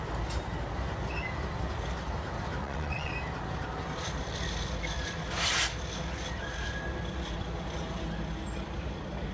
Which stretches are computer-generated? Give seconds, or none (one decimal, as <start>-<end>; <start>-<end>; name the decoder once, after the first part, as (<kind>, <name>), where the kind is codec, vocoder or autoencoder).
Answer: 2.6-3.1 (vocoder, WaveNeXt)